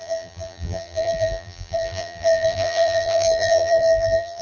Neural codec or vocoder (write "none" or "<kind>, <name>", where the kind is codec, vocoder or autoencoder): vocoder, BigVGAN v2